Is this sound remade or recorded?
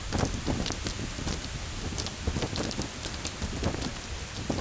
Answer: recorded